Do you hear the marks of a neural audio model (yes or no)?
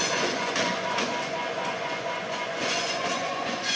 yes